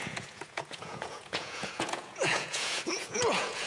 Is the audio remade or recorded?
remade